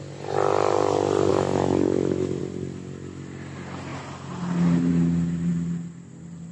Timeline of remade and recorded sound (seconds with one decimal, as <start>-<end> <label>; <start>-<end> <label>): 0.0-1.3 recorded; 1.3-2.4 remade; 2.4-6.5 recorded